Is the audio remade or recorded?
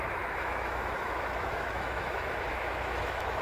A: remade